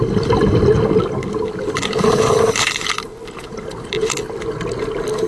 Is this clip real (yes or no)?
yes